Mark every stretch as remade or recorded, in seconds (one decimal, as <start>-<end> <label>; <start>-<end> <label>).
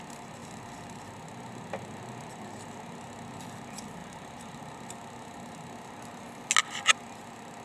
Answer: 0.0-4.0 recorded; 4.0-4.6 remade; 4.6-7.6 recorded